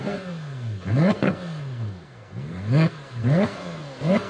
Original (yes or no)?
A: no